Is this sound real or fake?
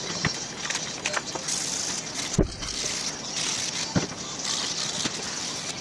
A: real